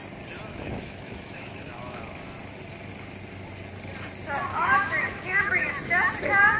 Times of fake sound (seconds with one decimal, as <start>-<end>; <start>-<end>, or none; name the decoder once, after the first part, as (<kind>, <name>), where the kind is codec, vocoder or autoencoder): 0.5-2.0 (autoencoder, DAC-VAE); 4.5-5.7